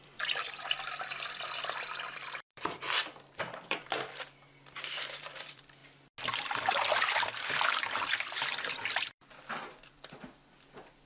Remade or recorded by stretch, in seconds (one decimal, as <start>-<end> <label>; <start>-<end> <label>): 0.0-5.8 remade; 5.8-6.4 recorded; 6.4-11.1 remade